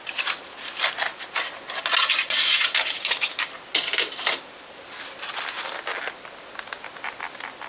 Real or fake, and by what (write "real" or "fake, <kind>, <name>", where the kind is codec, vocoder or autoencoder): real